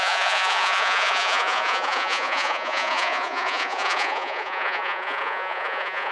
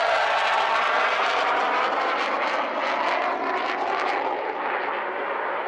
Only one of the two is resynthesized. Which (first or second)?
first